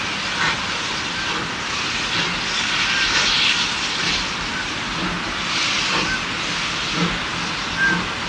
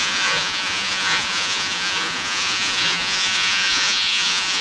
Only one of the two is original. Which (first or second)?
first